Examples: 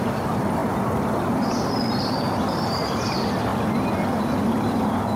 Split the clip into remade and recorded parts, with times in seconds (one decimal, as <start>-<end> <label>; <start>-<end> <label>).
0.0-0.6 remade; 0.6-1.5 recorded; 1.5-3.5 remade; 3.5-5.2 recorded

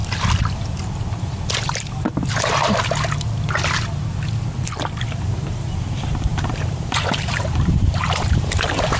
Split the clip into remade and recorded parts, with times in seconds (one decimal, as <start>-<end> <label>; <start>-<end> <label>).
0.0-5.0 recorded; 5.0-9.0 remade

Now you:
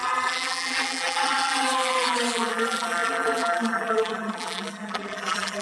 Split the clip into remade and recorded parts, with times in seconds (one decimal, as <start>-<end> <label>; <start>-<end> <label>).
0.0-5.6 remade